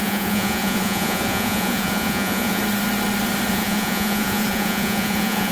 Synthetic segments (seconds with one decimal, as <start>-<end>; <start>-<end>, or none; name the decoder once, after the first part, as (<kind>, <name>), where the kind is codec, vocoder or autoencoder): 0.0-2.6 (vocoder, Vocos); 3.5-5.5